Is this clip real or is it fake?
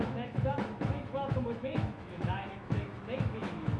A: fake